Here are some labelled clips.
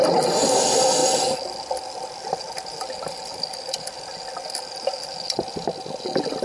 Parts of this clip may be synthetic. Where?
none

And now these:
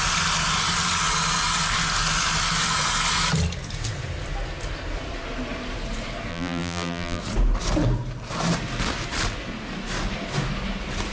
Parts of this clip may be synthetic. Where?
6.3-7.2 (vocoder, BigVGAN v2)

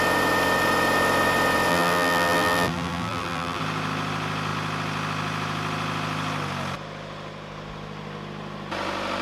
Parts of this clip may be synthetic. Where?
1.7-3.6 (vocoder, BigVGAN v2)

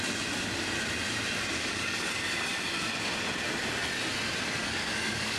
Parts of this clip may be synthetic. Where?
1.5-2.1 (codec, DAC); 4.6-5.4

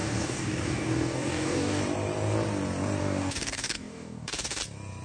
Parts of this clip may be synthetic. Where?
0.0-1.8 (codec, DAC); 3.0-4.6

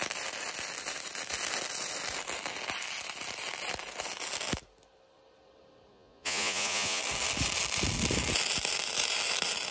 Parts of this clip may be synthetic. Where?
5.9-7.0 (vocoder, Vocos)

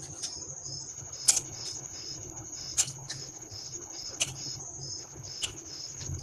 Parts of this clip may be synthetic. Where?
0.9-4.6 (codec, HILCodec); 5.0-6.2